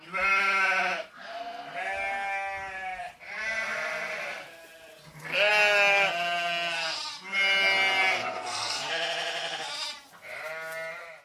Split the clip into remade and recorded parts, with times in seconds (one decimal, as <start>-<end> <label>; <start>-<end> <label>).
0.0-8.2 recorded; 8.2-8.9 remade; 8.9-11.2 recorded